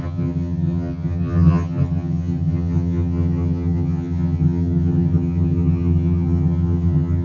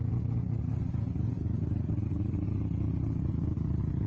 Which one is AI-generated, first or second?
first